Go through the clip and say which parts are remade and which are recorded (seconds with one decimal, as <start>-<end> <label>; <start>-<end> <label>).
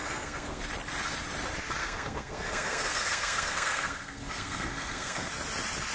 0.0-0.6 remade; 0.6-1.8 recorded; 1.8-5.3 remade; 5.3-5.9 recorded